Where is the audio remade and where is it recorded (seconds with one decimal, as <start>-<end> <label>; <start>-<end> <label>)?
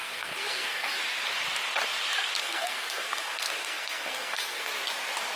0.0-1.0 remade; 1.0-2.4 recorded; 2.4-4.7 remade; 4.7-5.4 recorded